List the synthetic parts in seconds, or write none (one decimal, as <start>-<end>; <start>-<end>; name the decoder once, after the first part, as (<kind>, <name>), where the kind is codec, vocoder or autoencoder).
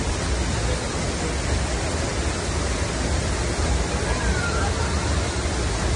none